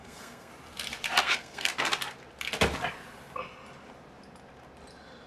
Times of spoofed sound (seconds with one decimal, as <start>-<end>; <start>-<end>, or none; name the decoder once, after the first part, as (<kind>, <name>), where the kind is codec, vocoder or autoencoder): 0.0-0.5 (codec, SNAC); 1.2-1.7